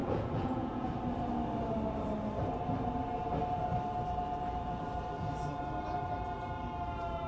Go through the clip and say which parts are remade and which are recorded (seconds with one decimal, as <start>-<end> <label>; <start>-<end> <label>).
0.0-0.9 remade; 0.9-7.3 recorded